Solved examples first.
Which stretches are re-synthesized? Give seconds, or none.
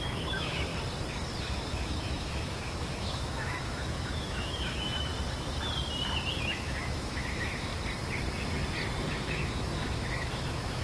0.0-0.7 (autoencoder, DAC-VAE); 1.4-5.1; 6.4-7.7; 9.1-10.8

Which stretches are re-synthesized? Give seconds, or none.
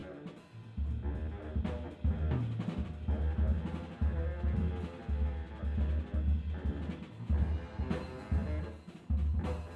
none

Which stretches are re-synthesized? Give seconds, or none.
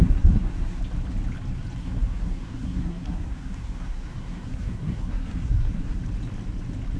0.0-0.8 (codec, SNAC); 1.8-6.0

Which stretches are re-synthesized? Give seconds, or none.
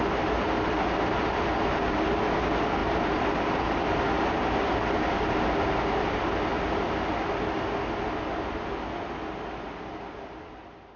2.8-5.2 (vocoder, BigVGAN v2); 6.5-7.5